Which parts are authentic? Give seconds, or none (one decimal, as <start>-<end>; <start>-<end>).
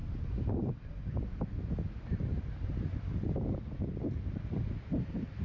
0.0-5.4